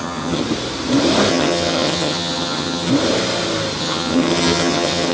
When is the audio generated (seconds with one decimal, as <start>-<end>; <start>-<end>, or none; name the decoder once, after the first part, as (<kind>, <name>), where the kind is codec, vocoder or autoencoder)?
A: 0.0-0.4 (vocoder, HiFi-GAN); 1.3-2.9; 3.8-5.1

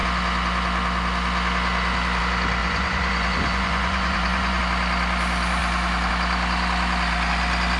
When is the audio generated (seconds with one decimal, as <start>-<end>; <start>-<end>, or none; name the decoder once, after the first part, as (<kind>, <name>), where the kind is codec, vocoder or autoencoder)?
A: 2.6-4.6 (vocoder, Vocos)

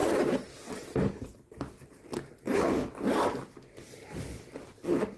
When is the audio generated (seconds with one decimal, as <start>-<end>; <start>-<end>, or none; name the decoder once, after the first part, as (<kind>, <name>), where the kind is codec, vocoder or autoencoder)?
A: none

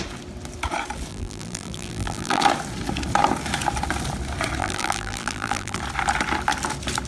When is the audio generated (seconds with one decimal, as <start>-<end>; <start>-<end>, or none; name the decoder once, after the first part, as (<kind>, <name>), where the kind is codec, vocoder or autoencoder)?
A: 1.1-2.4 (vocoder, BigVGAN v2); 4.6-5.8

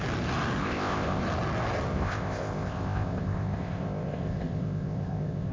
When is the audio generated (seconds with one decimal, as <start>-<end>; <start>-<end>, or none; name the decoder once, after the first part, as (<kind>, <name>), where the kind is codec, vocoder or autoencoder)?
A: 0.6-1.2 (codec, ZipCodec); 1.9-5.5

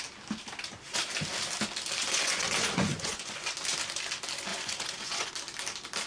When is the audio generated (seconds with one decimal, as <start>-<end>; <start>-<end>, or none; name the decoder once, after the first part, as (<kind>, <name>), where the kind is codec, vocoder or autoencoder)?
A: 2.0-3.5 (vocoder, Vocos); 4.5-5.3

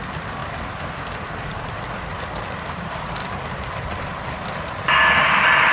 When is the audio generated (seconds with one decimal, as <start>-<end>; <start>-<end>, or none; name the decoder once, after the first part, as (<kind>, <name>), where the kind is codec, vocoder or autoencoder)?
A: 0.4-2.2 (vocoder, BigVGAN v2); 3.2-5.7

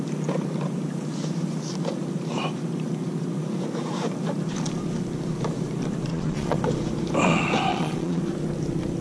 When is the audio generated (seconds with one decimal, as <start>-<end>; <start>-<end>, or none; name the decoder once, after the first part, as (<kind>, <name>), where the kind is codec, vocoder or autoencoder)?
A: 6.1-6.6 (vocoder, Vocos); 7.7-8.2